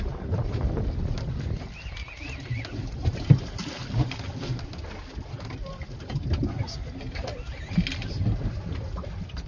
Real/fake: real